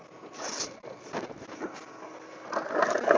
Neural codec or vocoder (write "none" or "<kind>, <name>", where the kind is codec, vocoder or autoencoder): none